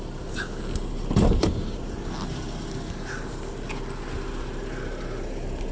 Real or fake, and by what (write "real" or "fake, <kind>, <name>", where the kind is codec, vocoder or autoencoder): real